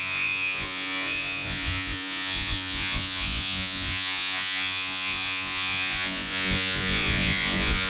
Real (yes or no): no